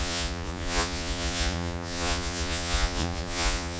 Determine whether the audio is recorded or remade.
remade